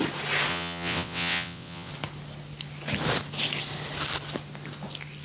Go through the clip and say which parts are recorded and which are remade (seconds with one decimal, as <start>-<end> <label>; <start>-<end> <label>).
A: 0.0-0.5 recorded; 0.5-1.9 remade; 1.9-5.2 recorded